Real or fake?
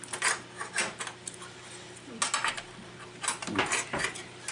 real